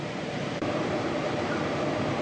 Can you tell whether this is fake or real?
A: fake